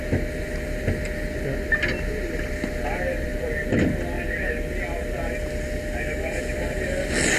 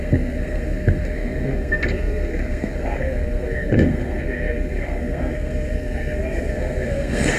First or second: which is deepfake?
second